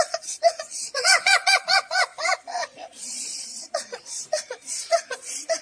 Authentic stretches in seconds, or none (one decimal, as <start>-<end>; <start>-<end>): none